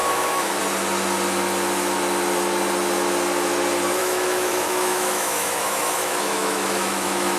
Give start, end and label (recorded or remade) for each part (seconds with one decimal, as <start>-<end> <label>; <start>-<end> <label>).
0.0-0.6 remade; 0.6-4.0 recorded; 4.0-7.4 remade